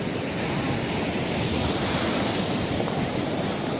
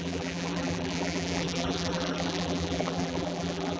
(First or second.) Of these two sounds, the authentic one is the first